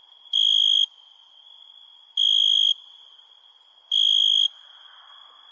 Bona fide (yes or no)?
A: yes